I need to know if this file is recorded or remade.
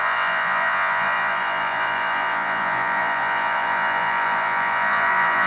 remade